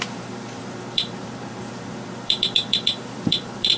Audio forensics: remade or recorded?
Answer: remade